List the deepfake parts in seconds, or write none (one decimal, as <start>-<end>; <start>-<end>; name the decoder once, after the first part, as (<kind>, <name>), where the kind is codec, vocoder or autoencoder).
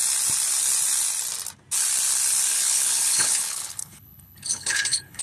2.5-5.2 (codec, HILCodec)